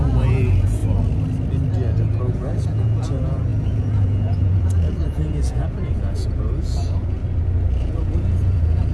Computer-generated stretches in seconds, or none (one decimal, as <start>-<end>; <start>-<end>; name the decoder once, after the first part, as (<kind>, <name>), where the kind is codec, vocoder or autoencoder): 0.0-0.8 (vocoder, Vocos); 2.2-7.2; 7.8-8.9